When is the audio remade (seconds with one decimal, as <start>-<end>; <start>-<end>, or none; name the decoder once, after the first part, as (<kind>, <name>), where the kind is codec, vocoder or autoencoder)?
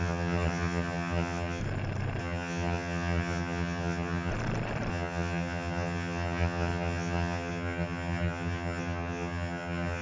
0.0-1.6 (vocoder, HiFi-GAN); 2.2-4.3; 4.9-10.0